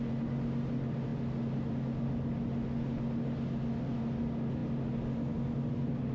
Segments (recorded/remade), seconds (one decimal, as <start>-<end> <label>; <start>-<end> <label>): 0.0-6.1 recorded